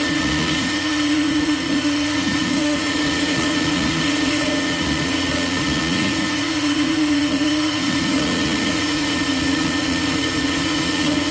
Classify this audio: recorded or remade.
remade